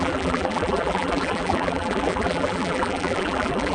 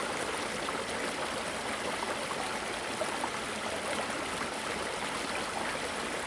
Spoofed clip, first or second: first